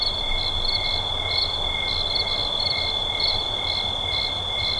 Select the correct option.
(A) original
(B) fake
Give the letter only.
A